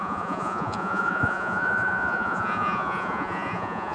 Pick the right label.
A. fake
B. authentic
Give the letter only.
A